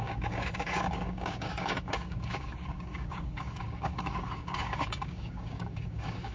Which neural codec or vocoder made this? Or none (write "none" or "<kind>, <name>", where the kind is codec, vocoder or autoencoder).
codec, DAC